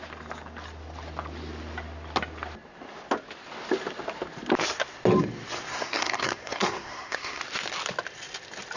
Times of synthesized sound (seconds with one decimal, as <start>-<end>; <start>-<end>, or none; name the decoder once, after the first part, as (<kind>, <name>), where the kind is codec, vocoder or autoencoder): 5.7-7.4 (codec, SNAC)